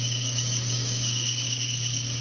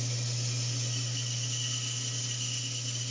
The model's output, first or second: first